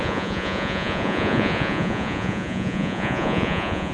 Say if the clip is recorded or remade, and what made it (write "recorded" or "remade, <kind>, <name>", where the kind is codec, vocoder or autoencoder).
remade, vocoder, Vocos